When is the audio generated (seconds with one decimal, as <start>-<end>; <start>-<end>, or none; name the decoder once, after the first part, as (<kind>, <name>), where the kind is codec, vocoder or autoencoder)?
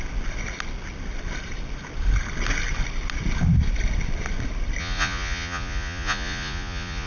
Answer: 4.8-7.1 (vocoder, Vocos)